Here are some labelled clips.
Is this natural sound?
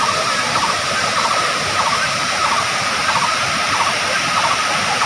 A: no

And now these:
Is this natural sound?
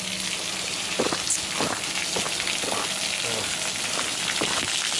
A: yes